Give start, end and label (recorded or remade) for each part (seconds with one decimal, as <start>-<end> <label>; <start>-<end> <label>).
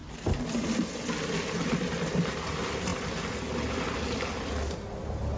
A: 0.0-5.4 recorded